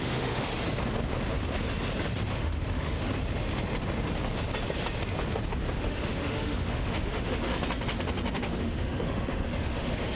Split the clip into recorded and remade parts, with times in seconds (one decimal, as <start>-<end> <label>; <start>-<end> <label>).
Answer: 0.0-0.5 remade; 0.5-2.3 recorded; 2.3-3.1 remade; 3.1-5.8 recorded; 5.8-7.5 remade; 7.5-8.3 recorded; 8.3-10.2 remade